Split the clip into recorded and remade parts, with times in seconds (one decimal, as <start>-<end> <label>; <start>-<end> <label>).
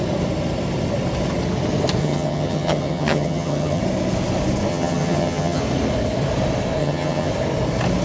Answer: 0.0-2.0 recorded; 2.0-3.8 remade; 3.8-4.7 recorded; 4.7-5.6 remade; 5.6-6.8 recorded; 6.8-7.3 remade; 7.3-8.0 recorded